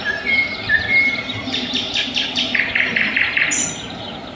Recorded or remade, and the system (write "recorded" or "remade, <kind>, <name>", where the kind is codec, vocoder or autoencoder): recorded